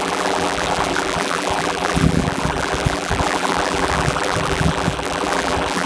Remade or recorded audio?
remade